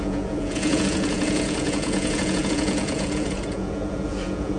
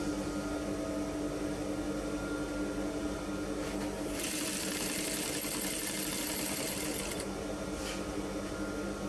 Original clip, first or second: second